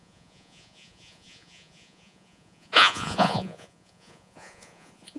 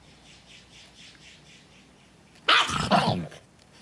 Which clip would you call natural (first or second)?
second